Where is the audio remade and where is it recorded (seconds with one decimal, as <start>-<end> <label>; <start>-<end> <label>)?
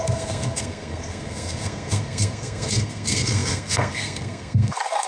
0.0-5.1 remade